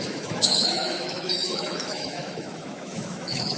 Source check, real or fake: fake